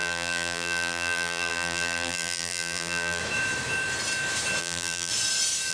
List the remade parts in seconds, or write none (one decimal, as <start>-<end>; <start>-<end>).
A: 0.0-3.2; 4.6-5.1

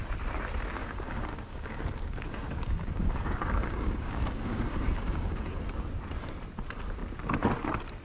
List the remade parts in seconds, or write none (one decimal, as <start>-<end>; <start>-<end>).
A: 0.8-5.6

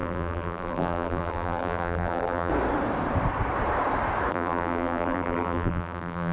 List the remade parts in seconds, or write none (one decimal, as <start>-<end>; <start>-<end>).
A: 0.0-2.5; 4.3-6.3

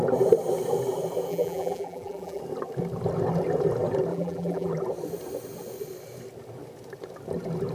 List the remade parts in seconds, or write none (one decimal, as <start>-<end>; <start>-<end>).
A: 1.3-2.4; 4.1-4.7